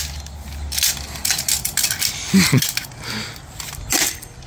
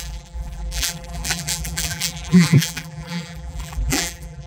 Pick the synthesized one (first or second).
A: second